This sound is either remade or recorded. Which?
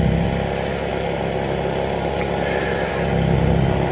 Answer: recorded